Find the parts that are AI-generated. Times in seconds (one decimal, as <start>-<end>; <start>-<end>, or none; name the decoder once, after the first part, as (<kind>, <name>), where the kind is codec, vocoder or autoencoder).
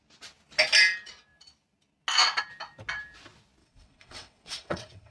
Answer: 3.6-5.1 (vocoder, WaveNeXt)